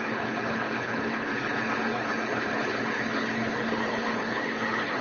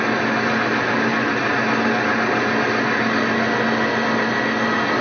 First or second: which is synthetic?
first